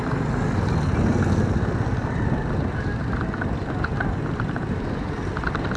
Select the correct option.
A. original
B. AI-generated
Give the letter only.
A